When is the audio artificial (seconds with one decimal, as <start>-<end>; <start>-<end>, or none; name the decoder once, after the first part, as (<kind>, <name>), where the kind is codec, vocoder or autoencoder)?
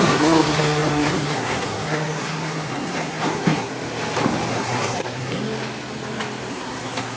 0.0-3.7 (codec, SNAC); 4.5-5.4; 6.5-7.2